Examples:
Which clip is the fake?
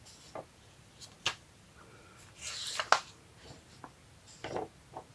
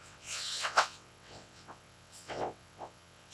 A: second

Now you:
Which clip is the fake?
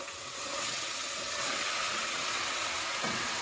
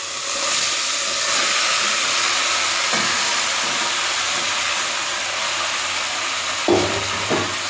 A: first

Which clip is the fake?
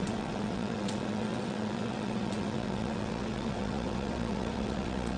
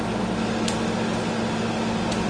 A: first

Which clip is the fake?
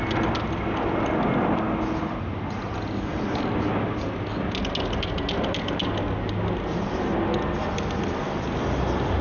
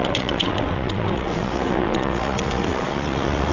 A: second